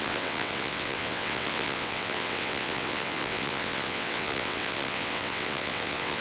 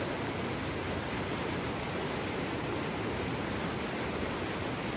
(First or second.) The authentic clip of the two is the second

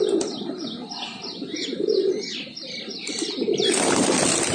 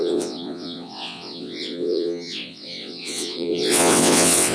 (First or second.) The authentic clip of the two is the first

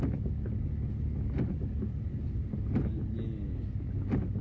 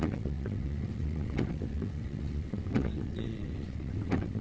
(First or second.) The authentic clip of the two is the first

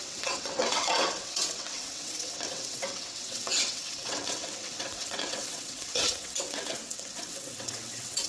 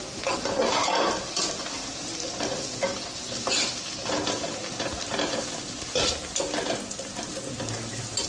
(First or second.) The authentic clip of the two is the second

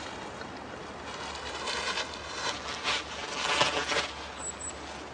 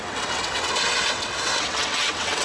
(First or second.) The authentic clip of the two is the first